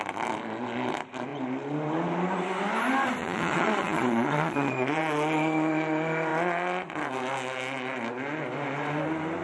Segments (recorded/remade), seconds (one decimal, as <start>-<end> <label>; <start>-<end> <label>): 0.0-3.2 recorded; 3.2-5.0 remade; 5.0-9.4 recorded